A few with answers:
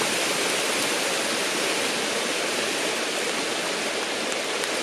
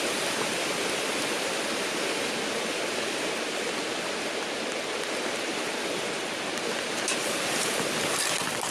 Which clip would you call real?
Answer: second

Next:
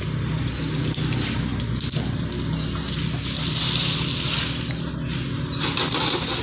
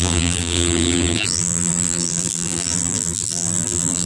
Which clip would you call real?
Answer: first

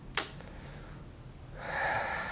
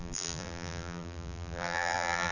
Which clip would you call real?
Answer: first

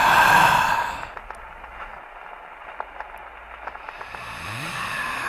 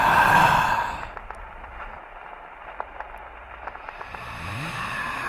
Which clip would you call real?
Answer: first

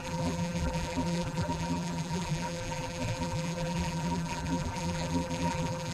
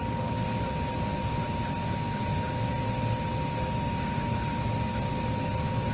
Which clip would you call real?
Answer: second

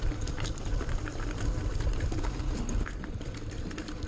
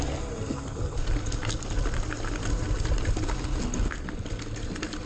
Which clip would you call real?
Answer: second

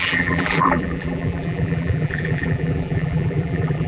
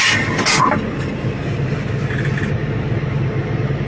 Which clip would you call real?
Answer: second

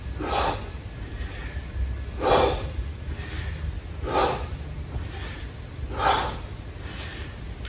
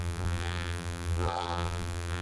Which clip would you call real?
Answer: first